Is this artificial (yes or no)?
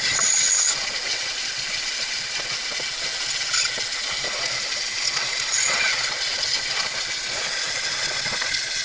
yes